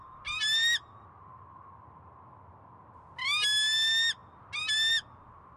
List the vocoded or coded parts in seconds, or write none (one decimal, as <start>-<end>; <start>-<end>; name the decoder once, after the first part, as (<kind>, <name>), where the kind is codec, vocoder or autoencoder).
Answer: none